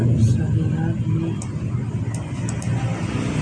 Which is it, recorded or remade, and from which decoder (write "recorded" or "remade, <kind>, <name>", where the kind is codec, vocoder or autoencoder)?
recorded